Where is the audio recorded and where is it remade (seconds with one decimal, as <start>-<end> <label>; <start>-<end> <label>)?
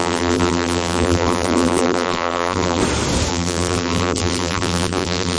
0.0-2.8 remade; 2.8-3.3 recorded; 3.3-5.4 remade